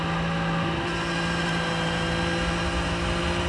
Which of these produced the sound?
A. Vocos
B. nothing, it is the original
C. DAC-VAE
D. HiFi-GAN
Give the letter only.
B